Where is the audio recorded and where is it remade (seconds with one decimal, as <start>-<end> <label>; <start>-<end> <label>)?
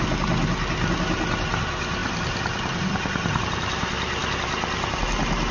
0.0-5.5 recorded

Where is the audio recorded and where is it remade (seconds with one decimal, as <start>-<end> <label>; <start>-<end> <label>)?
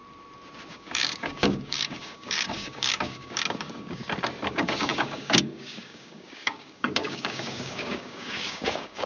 0.0-0.7 recorded; 0.7-4.0 remade; 4.0-4.5 recorded; 4.5-9.1 remade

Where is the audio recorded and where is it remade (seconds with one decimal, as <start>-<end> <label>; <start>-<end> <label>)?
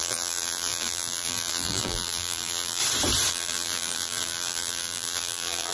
0.0-2.8 remade; 2.8-3.3 recorded; 3.3-5.7 remade